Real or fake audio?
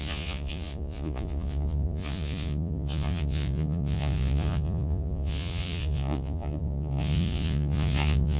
fake